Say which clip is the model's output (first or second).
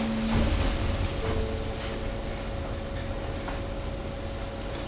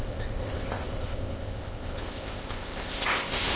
second